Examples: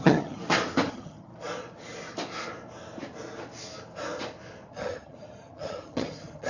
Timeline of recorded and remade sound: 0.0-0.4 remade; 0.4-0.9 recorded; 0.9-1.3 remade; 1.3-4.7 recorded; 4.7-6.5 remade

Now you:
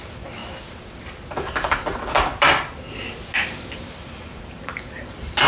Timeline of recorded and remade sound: 0.0-0.4 remade; 0.4-3.7 recorded; 3.7-5.5 remade

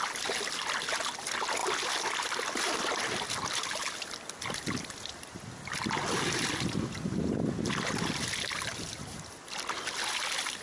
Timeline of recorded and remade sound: 0.0-10.6 recorded

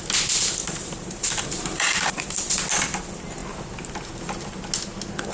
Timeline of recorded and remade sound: 0.0-0.6 recorded; 0.6-2.5 remade; 2.5-5.3 recorded

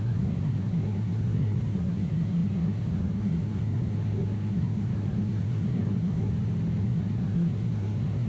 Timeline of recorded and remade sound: 0.0-6.3 remade; 6.3-6.8 recorded; 6.8-8.3 remade

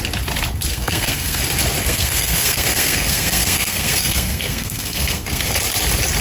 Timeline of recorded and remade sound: 0.0-0.7 recorded; 0.7-1.4 remade; 1.4-1.8 recorded; 1.8-5.5 remade; 5.5-6.2 recorded

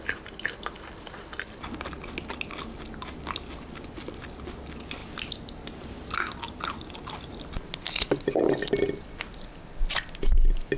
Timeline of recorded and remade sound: 0.0-10.8 recorded

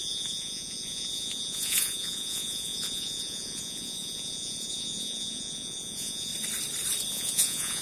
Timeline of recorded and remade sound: 0.0-6.3 remade; 6.3-7.1 recorded; 7.1-7.8 remade